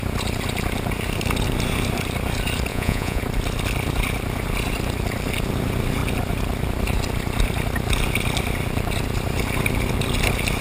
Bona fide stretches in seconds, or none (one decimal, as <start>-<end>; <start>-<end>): 0.0-2.7; 3.2-10.6